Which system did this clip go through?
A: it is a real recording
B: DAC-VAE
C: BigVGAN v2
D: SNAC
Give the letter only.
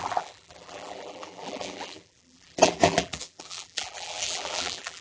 C